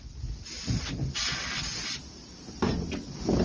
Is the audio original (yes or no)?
yes